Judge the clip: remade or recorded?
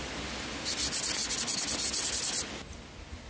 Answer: recorded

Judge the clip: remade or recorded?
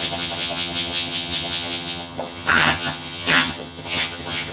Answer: remade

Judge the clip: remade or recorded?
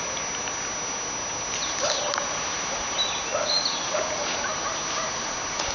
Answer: recorded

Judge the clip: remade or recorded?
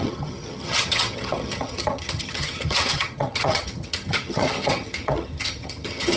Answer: remade